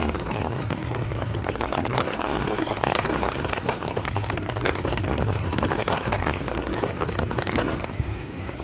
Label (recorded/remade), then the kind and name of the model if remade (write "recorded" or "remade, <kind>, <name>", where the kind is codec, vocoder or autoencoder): remade, codec, SNAC